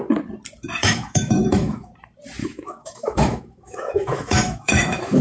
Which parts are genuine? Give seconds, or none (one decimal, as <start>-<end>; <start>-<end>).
0.0-0.8; 1.9-2.4